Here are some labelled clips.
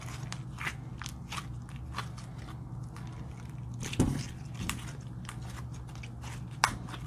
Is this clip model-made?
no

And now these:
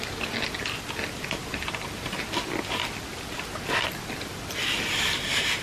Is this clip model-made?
no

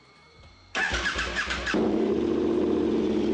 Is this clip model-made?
yes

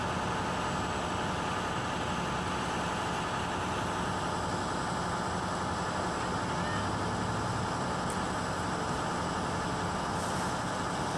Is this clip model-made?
no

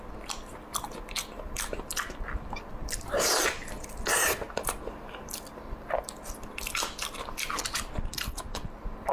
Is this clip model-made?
no